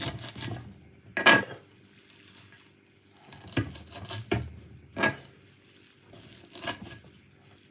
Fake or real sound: real